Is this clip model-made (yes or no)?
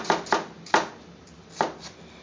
no